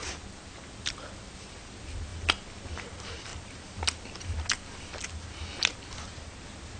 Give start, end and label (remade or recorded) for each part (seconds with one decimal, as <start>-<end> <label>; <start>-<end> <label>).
0.0-6.8 recorded

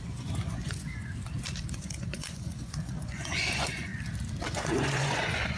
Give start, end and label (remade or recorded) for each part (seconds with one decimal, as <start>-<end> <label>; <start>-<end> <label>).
0.0-1.0 remade; 1.0-1.7 recorded; 1.7-3.9 remade; 3.9-4.4 recorded; 4.4-5.6 remade

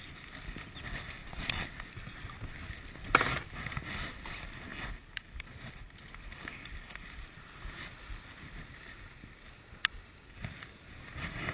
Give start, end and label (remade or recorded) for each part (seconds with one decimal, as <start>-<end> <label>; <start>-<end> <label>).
0.0-1.2 recorded; 1.2-1.7 remade; 1.7-11.5 recorded

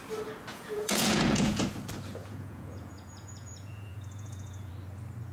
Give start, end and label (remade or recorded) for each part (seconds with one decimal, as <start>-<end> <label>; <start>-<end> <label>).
0.0-0.5 recorded; 0.5-1.6 remade; 1.6-2.2 recorded; 2.2-4.7 remade; 4.7-5.3 recorded

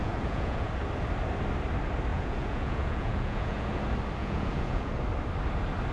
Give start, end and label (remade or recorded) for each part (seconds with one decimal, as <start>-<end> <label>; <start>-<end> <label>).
0.0-0.7 remade; 0.7-2.1 recorded; 2.1-3.7 remade; 3.7-4.2 recorded; 4.2-4.9 remade; 4.9-5.9 recorded

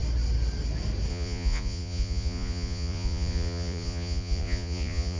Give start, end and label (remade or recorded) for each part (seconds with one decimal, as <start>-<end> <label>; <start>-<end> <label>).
0.0-1.1 recorded; 1.1-5.2 remade

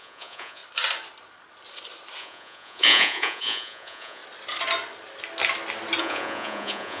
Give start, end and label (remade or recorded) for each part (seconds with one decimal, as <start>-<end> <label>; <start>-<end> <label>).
0.0-0.6 remade; 0.6-2.2 recorded; 2.2-4.2 remade; 4.2-6.0 recorded; 6.0-7.0 remade